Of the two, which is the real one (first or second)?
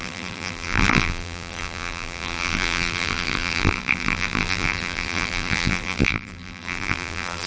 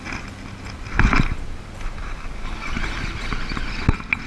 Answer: second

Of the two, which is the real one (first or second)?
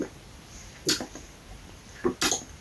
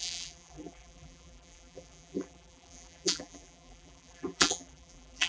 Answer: first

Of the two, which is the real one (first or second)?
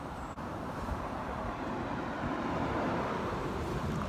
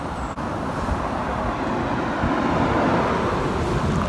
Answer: second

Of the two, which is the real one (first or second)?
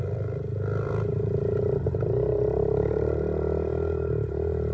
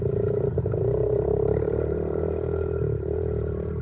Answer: first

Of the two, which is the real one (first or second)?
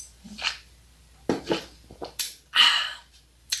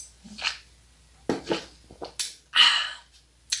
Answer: second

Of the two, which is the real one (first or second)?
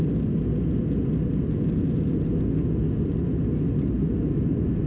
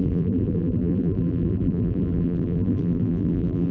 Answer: first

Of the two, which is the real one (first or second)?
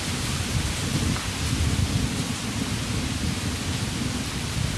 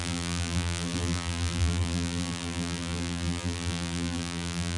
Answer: first